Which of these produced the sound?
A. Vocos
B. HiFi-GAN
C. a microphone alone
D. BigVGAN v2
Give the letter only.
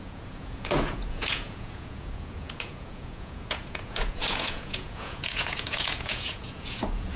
A